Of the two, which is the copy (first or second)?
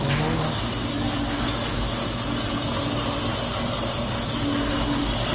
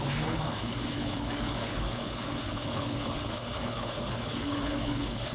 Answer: second